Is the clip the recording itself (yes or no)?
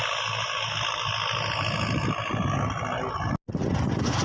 yes